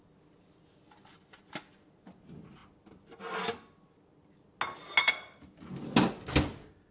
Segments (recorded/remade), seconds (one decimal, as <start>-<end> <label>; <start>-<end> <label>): 0.0-6.9 recorded